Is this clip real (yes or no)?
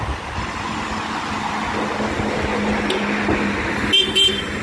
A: yes